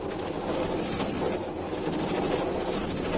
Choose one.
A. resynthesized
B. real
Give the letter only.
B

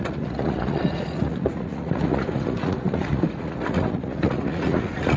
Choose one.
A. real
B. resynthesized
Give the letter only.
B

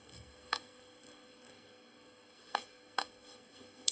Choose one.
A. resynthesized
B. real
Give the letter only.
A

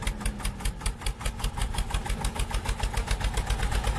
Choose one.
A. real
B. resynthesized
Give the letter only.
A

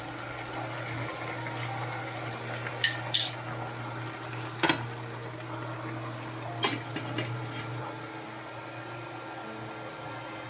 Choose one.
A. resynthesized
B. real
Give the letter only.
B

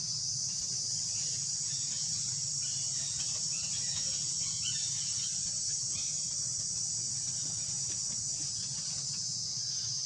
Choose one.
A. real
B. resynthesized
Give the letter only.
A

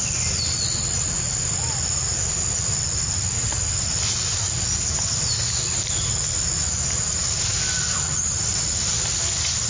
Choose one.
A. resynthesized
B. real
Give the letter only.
B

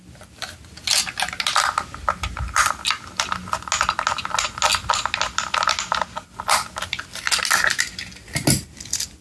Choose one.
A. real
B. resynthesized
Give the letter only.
A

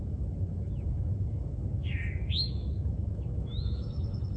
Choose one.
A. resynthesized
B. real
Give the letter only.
A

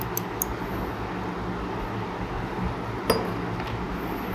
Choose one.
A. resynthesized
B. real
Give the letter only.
B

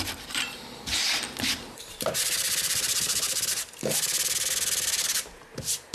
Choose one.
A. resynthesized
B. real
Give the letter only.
A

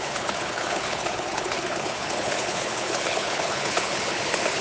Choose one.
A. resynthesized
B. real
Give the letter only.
A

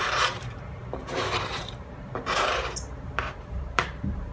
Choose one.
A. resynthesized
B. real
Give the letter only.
A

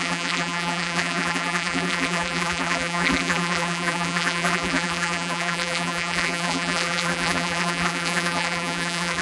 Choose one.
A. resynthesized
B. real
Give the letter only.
A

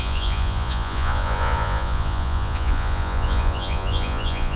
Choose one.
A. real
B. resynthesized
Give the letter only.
B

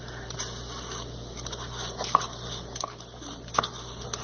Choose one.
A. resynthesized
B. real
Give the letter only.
B